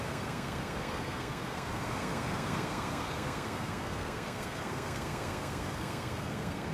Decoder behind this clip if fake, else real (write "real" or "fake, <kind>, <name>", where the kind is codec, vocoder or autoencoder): fake, codec, SNAC